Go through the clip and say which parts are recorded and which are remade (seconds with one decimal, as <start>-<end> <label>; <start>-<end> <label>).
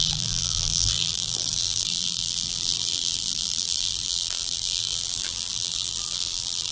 0.0-6.7 remade